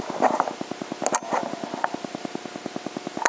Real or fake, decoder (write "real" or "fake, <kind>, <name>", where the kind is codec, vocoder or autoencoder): real